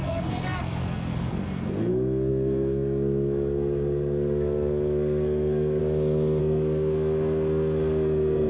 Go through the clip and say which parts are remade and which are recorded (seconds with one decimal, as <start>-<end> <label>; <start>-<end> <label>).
0.0-5.8 remade; 5.8-6.4 recorded; 6.4-8.5 remade